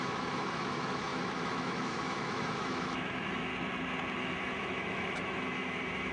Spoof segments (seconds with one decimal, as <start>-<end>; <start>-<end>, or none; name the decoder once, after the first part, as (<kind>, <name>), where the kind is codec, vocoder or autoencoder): 0.0-3.5 (autoencoder, DAC-VAE); 4.2-6.1